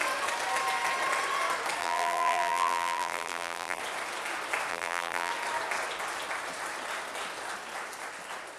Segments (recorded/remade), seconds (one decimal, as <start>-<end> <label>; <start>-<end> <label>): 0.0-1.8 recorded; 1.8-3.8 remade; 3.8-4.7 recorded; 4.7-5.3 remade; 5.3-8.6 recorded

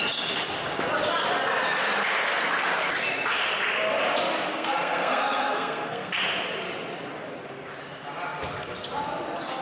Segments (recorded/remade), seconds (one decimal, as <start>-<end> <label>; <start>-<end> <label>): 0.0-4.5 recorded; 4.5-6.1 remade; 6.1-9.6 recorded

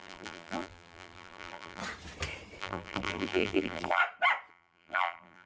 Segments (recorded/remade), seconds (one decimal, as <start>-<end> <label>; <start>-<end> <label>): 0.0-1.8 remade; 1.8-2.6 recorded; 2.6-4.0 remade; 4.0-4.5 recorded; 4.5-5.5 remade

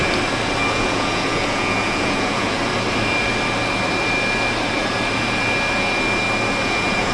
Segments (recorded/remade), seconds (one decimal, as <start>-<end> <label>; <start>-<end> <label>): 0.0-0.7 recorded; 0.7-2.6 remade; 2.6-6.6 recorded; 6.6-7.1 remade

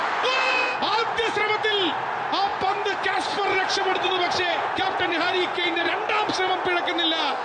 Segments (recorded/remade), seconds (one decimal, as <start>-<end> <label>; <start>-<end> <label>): 0.0-1.5 remade; 1.5-2.5 recorded; 2.5-5.9 remade; 5.9-7.4 recorded